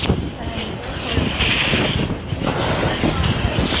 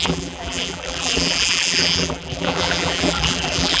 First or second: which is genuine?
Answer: first